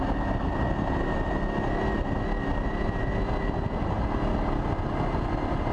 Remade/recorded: recorded